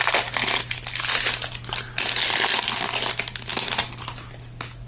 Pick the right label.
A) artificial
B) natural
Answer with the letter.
B